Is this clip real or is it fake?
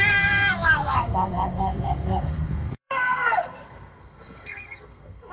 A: fake